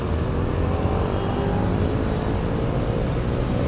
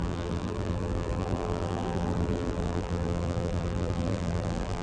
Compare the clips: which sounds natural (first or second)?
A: first